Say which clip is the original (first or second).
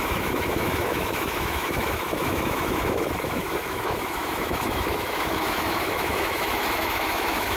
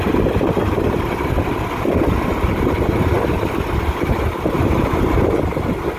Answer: second